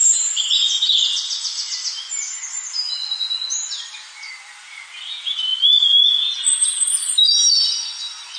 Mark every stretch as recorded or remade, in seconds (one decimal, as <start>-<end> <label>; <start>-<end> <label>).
0.0-8.4 recorded